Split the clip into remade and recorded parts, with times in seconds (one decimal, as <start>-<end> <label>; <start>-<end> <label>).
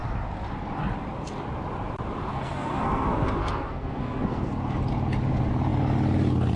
0.0-2.3 recorded; 2.3-4.5 remade; 4.5-6.6 recorded